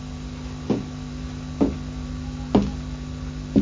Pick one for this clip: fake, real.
real